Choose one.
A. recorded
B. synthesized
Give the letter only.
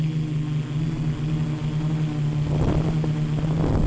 A